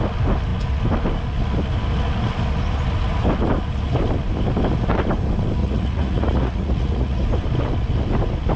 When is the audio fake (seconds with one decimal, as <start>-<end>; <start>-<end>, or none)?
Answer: 5.6-7.2